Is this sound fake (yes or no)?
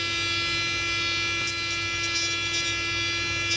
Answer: no